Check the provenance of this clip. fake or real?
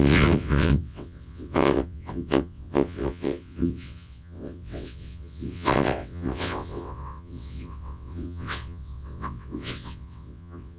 fake